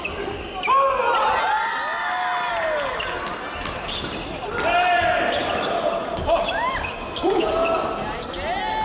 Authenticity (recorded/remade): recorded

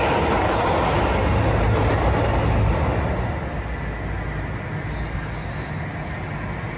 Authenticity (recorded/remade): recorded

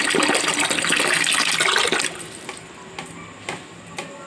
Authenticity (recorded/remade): recorded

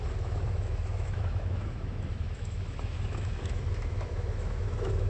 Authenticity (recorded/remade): remade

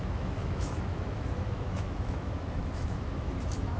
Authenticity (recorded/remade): remade